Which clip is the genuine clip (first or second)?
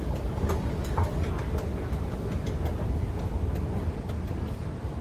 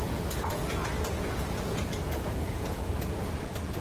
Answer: first